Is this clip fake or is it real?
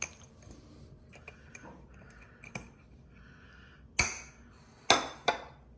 real